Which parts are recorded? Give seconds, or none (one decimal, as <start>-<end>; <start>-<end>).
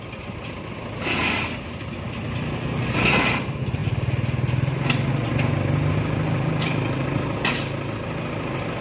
0.0-8.8